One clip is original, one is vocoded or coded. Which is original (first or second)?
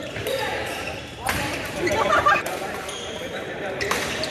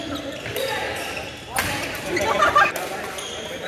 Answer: second